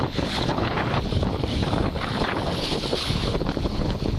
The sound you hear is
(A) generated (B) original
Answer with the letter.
A